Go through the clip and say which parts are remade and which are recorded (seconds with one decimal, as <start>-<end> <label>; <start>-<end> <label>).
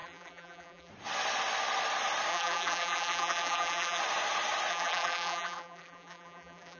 0.0-0.9 remade; 0.9-2.3 recorded; 2.3-4.0 remade; 4.0-4.7 recorded; 4.7-6.8 remade